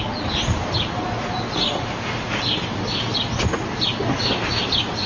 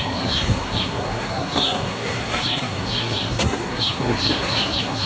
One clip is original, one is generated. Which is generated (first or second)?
second